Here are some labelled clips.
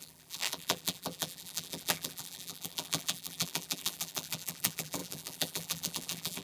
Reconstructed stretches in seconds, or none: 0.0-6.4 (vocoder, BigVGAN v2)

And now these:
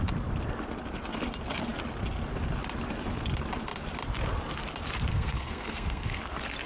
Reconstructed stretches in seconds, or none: 5.1-6.2 (codec, SNAC)

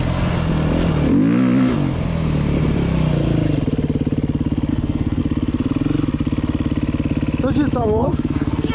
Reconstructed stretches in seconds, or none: 4.7-5.2 (codec, SNAC); 7.8-8.7

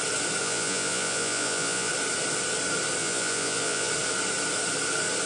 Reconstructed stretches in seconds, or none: 0.4-1.9 (vocoder, Vocos); 3.0-3.9

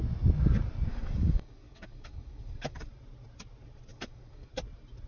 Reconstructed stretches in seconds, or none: 0.9-2.9 (codec, DAC); 3.9-4.5

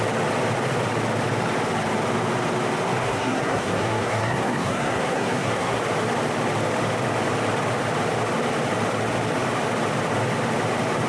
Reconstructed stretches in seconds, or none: 3.0-5.8 (codec, SNAC)

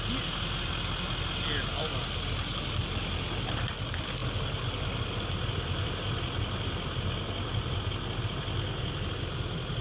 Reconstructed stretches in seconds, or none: none